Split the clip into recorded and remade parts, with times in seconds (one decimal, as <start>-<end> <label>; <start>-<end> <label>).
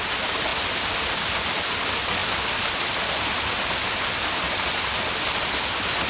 0.0-6.1 recorded